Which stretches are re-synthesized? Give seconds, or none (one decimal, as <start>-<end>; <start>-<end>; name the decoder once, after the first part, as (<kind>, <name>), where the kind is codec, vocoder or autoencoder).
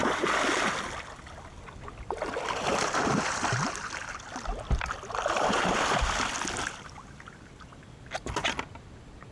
none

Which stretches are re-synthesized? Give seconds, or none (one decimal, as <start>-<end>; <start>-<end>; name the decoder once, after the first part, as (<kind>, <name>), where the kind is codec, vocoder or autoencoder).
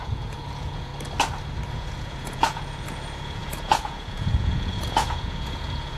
0.0-0.9 (vocoder, Vocos); 1.7-6.0